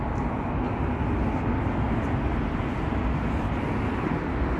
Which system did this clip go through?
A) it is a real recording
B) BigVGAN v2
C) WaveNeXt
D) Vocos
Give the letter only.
A